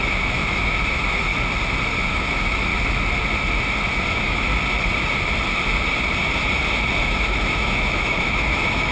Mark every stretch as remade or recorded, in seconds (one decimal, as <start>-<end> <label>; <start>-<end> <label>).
0.0-1.3 remade; 1.3-2.1 recorded; 2.1-2.7 remade; 2.7-4.1 recorded; 4.1-4.5 remade; 4.5-7.0 recorded; 7.0-8.9 remade